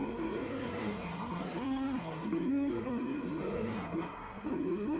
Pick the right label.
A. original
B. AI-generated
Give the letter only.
B